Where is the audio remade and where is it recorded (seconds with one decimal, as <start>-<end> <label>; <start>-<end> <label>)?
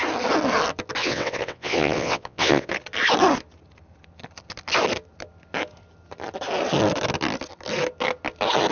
0.0-1.0 recorded; 1.0-2.7 remade; 2.7-8.7 recorded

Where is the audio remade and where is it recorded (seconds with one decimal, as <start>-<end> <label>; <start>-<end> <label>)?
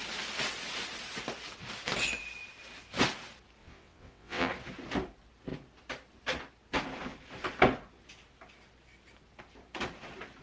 0.0-3.6 recorded; 3.6-4.5 remade; 4.5-10.4 recorded